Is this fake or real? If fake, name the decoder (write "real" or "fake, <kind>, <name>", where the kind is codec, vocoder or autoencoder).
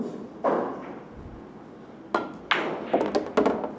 real